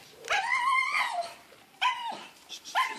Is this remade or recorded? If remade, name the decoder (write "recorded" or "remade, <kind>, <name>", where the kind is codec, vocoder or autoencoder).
remade, vocoder, BigVGAN v2